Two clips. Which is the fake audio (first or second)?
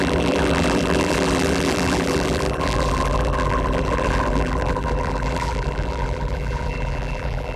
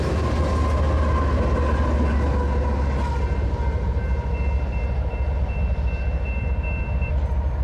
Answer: first